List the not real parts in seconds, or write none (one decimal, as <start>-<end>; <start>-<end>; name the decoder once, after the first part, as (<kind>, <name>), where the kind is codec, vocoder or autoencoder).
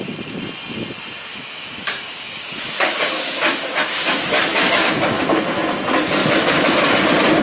1.3-3.7 (autoencoder, DAC-VAE); 4.5-5.2; 6.2-6.8